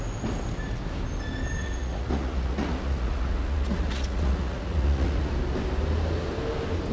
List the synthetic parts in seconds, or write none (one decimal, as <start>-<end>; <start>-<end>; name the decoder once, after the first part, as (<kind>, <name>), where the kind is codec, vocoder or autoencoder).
1.6-5.3 (vocoder, Vocos)